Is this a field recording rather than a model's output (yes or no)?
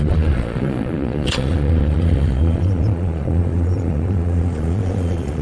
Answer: no